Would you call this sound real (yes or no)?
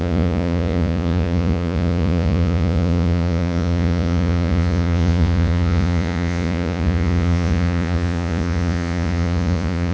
no